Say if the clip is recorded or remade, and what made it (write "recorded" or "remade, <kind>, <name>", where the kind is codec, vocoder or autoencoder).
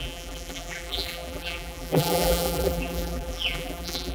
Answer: remade, vocoder, BigVGAN v2